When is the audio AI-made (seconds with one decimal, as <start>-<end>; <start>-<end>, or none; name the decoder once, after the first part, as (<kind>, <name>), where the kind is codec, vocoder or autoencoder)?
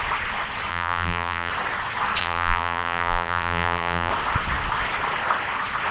0.7-1.5 (vocoder, BigVGAN v2); 2.2-4.1